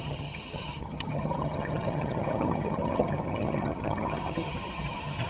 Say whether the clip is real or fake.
fake